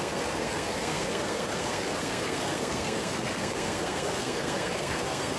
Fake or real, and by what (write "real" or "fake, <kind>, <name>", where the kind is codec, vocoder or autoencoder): fake, codec, SNAC